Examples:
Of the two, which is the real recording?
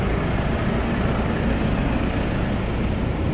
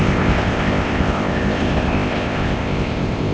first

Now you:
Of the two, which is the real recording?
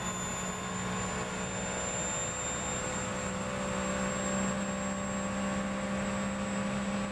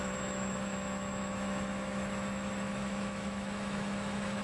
first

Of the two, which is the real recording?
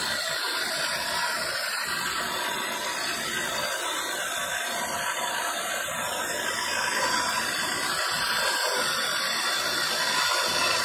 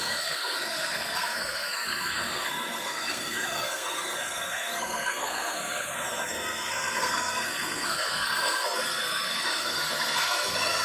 first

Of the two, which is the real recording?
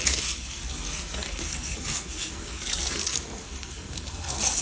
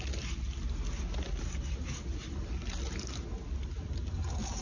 second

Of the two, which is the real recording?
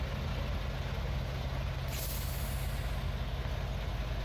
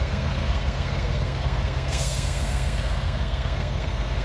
first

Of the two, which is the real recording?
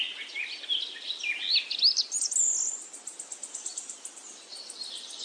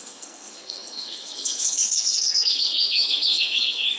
first